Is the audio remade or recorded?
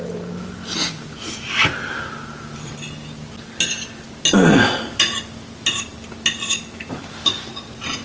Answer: recorded